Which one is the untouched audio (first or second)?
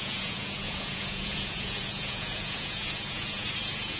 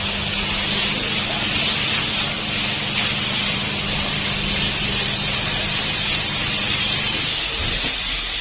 second